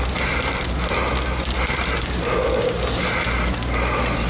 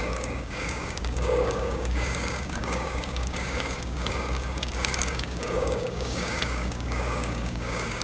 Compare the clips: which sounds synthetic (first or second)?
second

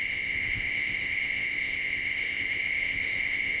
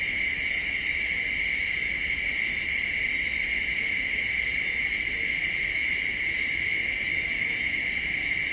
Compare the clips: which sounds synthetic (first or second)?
first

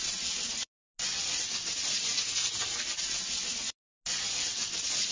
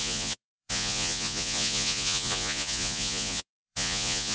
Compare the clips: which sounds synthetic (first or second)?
second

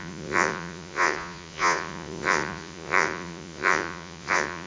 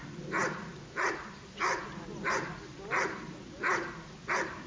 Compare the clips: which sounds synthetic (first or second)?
first